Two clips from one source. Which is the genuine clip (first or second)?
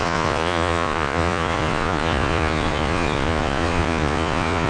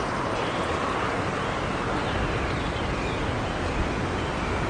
second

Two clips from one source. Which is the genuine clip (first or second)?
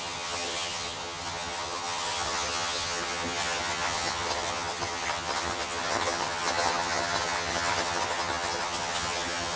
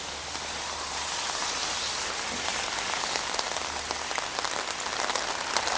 second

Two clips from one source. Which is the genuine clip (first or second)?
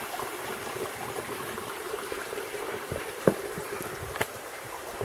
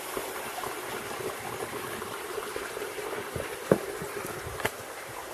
second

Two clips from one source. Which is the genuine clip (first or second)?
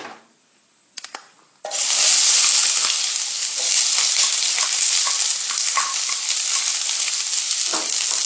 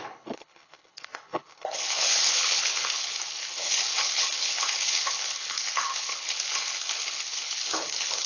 first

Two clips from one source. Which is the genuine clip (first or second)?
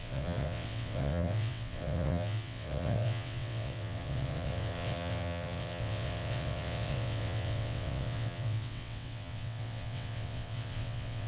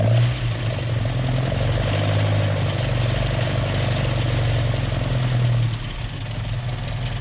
second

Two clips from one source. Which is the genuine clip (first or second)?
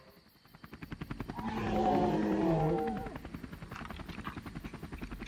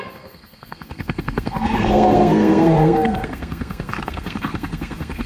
first